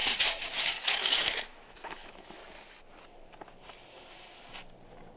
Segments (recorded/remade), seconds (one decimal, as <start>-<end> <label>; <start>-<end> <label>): 0.0-0.6 recorded; 0.6-2.4 remade; 2.4-5.2 recorded